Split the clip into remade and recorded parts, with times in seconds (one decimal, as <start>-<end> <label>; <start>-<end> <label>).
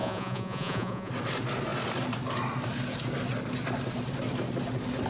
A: 0.0-1.1 remade; 1.1-5.1 recorded